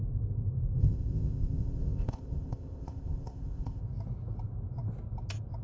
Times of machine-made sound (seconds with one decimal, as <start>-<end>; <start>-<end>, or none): 0.8-3.8